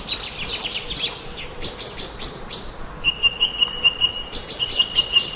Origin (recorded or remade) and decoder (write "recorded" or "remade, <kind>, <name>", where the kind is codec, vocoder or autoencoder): recorded